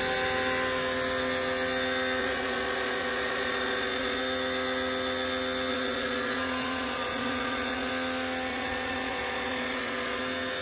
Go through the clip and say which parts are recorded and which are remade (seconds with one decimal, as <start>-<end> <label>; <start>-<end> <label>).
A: 0.0-2.2 recorded; 2.2-4.2 remade; 4.2-5.7 recorded; 5.7-7.9 remade; 7.9-8.5 recorded; 8.5-10.2 remade; 10.2-10.6 recorded